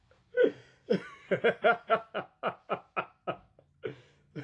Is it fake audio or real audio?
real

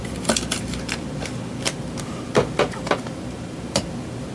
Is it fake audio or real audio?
real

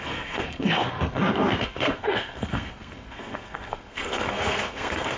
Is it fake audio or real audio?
fake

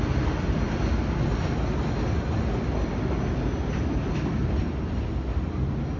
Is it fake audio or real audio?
real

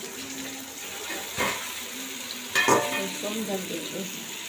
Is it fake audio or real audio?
real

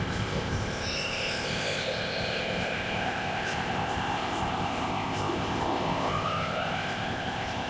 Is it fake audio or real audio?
fake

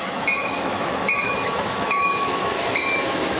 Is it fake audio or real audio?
fake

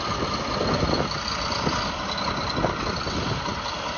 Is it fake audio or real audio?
real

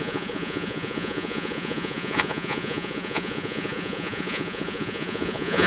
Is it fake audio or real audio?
fake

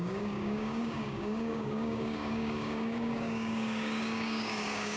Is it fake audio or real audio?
fake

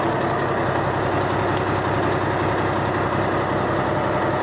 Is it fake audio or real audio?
real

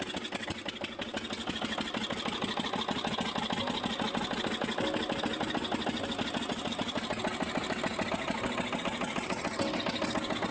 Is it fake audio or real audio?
real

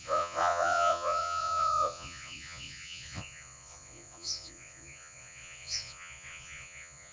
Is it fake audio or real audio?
fake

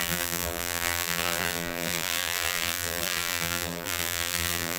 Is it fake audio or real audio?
fake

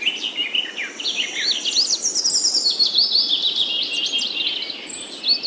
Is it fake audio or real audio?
real